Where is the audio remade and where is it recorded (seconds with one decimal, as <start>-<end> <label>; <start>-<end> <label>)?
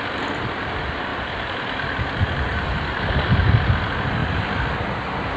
0.0-1.1 recorded; 1.1-3.0 remade; 3.0-5.4 recorded